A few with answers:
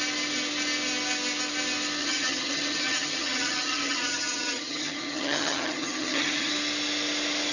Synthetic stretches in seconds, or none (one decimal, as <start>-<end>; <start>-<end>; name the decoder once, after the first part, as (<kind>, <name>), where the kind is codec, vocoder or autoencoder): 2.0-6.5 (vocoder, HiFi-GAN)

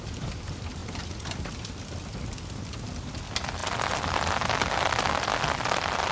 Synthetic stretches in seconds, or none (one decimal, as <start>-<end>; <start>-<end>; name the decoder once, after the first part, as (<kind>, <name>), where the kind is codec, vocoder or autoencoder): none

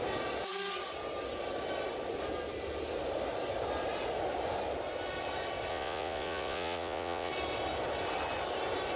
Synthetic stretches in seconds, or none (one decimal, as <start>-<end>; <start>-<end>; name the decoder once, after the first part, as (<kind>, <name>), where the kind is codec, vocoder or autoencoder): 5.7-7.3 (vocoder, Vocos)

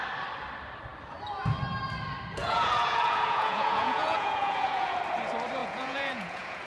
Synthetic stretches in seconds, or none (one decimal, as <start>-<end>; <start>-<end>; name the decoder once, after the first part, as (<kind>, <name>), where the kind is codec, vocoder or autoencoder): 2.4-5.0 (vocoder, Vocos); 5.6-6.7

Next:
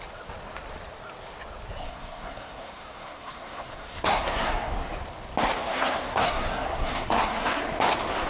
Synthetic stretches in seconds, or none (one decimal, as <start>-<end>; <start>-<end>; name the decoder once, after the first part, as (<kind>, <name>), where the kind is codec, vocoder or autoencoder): 1.8-4.7 (codec, SNAC); 5.6-7.6

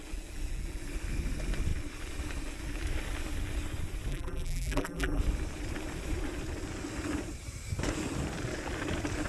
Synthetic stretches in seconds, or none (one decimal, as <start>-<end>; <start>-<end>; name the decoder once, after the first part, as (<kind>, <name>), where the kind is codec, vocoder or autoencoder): 4.1-5.2 (vocoder, BigVGAN v2)